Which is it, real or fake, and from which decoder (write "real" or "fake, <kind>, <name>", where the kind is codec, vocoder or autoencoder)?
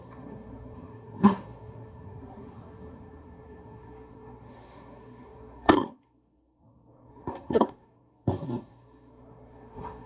fake, codec, SNAC